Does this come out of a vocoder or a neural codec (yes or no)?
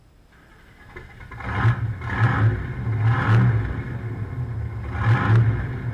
no